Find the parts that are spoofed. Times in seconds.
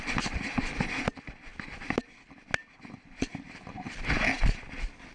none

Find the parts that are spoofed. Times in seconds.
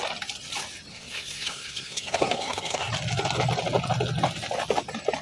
0.9-2.9 (codec, SNAC)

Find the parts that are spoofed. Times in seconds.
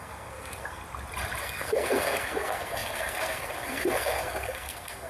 0.0-0.8 (codec, SNAC); 1.4-5.1